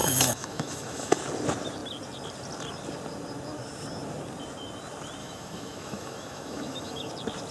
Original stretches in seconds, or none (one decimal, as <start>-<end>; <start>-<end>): 1.2-5.2; 7.1-7.5